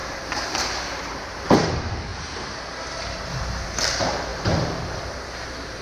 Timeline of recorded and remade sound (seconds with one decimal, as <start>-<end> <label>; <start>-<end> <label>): 0.0-2.1 remade; 2.1-3.0 recorded; 3.0-5.8 remade